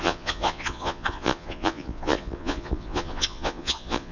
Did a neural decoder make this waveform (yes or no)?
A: yes